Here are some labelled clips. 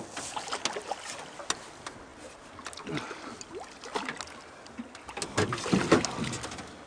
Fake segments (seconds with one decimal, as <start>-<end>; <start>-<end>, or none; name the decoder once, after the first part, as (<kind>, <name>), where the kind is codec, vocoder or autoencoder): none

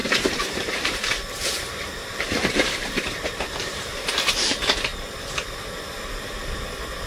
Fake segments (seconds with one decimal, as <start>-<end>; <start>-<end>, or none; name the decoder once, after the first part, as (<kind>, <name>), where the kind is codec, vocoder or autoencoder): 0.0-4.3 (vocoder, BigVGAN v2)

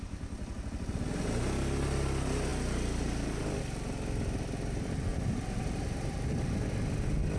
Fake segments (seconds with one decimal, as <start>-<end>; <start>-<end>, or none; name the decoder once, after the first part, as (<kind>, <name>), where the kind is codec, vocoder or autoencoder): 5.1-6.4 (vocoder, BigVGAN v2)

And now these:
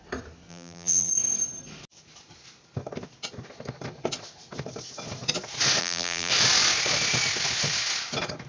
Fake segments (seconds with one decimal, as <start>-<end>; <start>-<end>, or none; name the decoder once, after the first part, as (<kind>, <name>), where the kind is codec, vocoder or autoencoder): 0.5-1.1 (vocoder, BigVGAN v2); 5.8-6.3

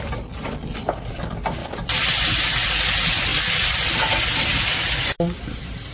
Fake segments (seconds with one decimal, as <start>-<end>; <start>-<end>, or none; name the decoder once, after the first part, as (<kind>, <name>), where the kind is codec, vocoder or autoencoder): 1.6-2.4 (vocoder, BigVGAN v2)

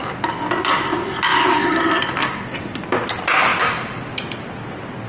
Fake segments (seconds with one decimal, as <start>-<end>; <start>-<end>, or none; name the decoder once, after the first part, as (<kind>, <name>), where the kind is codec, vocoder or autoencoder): 1.3-2.0 (vocoder, BigVGAN v2)